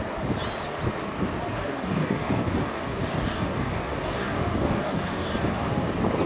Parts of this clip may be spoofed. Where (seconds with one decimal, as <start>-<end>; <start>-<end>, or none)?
1.5-5.3